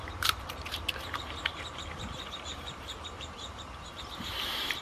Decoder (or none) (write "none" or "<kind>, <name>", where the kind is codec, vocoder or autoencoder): vocoder, BigVGAN v2